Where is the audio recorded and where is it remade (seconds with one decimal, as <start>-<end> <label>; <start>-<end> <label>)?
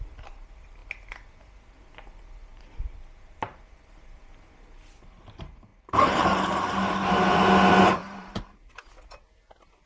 0.0-2.5 recorded; 2.5-4.3 remade; 4.3-5.7 recorded; 5.7-6.6 remade; 6.6-8.0 recorded; 8.0-8.9 remade; 8.9-9.9 recorded